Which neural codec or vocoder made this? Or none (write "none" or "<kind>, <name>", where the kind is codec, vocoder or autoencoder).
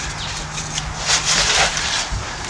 none